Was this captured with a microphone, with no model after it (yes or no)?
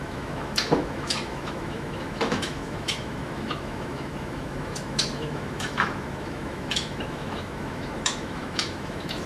no